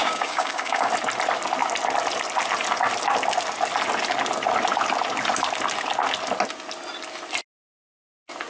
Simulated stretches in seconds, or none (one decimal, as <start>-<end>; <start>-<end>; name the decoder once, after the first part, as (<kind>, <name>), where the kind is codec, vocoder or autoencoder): 0.0-0.9 (codec, DAC)